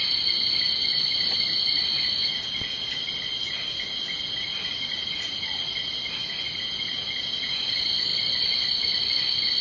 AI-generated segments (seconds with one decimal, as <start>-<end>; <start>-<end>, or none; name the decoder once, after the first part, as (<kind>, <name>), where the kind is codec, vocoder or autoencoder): none